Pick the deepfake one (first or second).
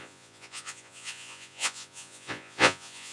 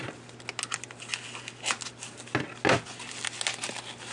first